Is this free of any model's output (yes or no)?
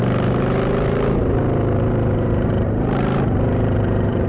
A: no